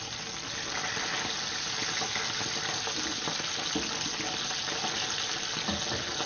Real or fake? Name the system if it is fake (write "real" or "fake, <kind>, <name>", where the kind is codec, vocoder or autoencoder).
real